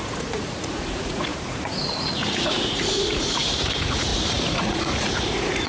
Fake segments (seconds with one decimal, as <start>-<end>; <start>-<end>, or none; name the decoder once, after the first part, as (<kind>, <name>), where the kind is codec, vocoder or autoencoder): 0.0-5.7 (vocoder, Vocos)